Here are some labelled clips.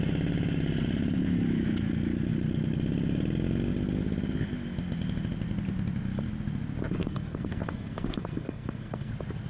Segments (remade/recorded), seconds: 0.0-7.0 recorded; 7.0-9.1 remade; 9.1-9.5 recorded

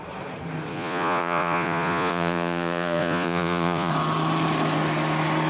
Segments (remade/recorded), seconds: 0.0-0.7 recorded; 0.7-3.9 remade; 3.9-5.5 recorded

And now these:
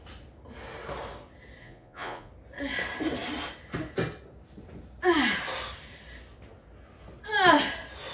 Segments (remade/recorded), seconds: 0.0-1.6 recorded; 1.6-2.3 remade; 2.3-8.1 recorded